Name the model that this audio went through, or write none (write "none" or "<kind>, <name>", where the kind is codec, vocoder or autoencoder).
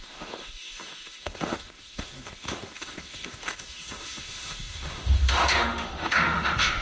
autoencoder, DAC-VAE